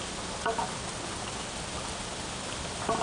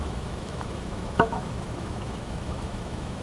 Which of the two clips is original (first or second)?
first